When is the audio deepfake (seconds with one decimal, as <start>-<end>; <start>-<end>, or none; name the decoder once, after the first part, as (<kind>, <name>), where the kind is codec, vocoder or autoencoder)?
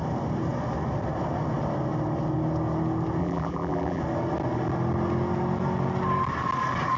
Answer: 3.2-4.0 (vocoder, BigVGAN v2)